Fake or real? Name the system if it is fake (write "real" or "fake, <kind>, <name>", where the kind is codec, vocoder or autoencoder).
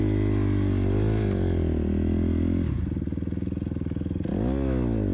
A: real